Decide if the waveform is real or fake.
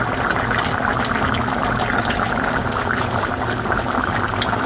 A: real